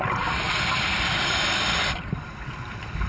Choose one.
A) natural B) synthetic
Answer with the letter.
B